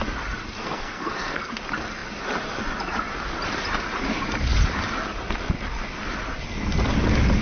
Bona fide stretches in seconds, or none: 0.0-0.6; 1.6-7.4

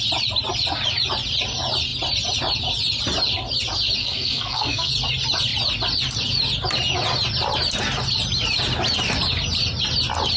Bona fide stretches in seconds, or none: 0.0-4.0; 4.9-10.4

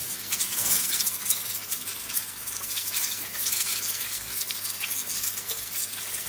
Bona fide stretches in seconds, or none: none

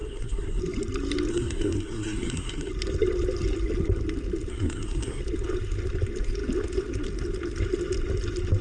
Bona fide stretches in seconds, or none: 0.6-1.3; 2.7-4.5; 5.2-8.6

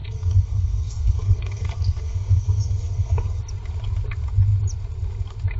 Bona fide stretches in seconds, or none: 3.4-5.6

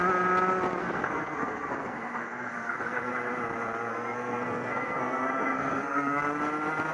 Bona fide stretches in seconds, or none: 0.0-0.8; 3.1-3.9; 6.2-6.9

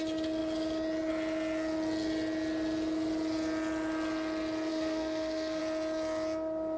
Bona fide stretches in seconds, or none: 0.0-4.7; 5.6-6.8

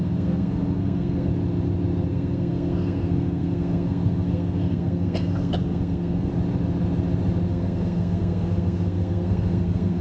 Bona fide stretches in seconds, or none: 1.3-2.1; 6.3-7.5